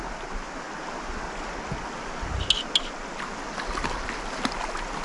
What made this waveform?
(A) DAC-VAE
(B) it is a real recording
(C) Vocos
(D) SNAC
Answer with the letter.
B